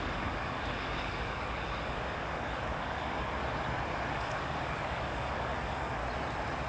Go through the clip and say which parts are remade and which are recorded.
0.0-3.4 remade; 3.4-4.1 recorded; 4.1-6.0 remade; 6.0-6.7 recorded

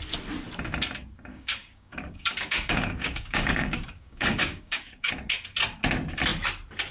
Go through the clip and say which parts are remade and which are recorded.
0.0-1.3 recorded; 1.3-5.1 remade; 5.1-6.9 recorded